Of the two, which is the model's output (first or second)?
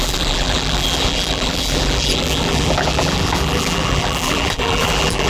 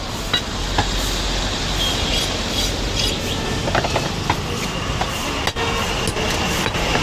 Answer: first